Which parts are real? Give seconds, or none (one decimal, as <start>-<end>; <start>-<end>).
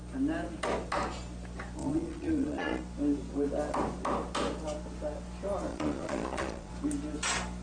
0.0-1.8; 2.8-5.7; 6.7-7.6